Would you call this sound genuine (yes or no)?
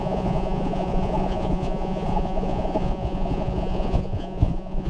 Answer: no